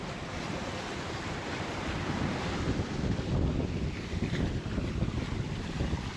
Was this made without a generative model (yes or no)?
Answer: no